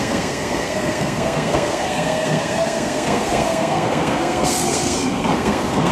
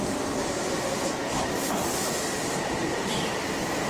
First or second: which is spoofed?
first